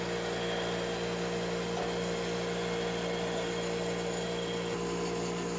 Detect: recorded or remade recorded